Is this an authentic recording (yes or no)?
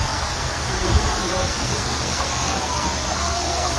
no